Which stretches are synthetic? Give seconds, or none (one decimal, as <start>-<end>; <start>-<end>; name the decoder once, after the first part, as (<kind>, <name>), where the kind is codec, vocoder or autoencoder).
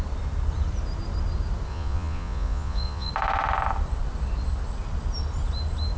1.7-3.1 (vocoder, Vocos)